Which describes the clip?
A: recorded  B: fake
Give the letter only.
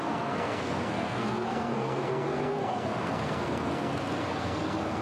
B